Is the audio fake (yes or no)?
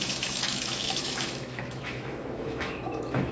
yes